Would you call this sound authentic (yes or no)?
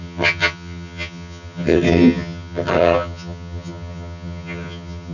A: no